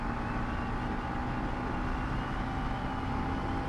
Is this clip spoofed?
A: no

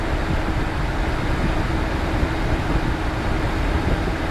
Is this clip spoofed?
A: no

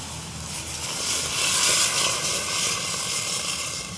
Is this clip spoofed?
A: no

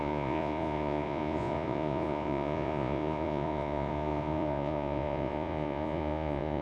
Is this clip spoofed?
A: yes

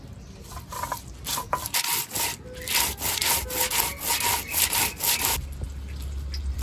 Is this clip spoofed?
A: no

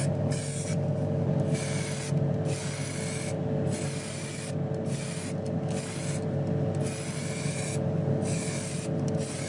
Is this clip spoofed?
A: no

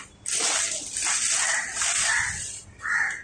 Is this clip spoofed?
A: no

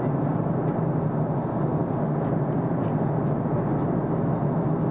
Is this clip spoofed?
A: no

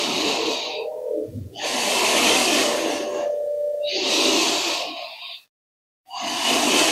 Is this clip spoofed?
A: yes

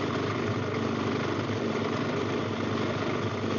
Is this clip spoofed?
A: no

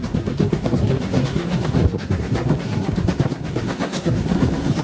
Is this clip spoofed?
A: yes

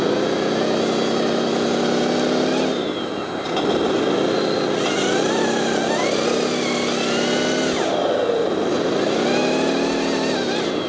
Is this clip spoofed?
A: no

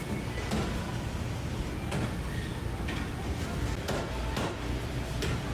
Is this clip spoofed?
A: no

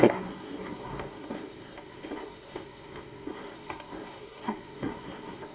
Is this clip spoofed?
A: yes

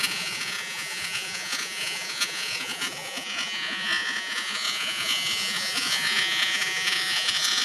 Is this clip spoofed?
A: yes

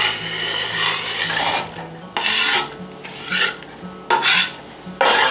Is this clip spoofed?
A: no